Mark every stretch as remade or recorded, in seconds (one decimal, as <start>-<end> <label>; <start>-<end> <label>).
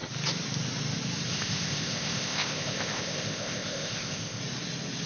0.0-1.3 recorded; 1.3-4.4 remade; 4.4-5.1 recorded